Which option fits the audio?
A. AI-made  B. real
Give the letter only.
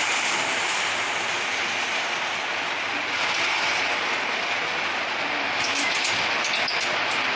B